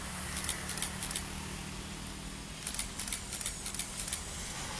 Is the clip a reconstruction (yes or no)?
no